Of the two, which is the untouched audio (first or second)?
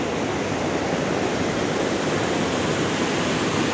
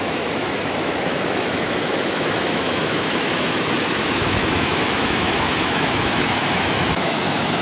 first